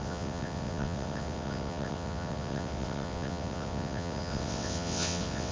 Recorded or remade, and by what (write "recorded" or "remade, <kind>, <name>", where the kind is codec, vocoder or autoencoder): remade, vocoder, WaveNeXt